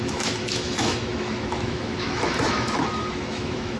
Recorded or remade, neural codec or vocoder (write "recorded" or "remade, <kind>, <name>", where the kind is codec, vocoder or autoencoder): remade, autoencoder, DAC-VAE